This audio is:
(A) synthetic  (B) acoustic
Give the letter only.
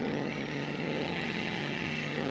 A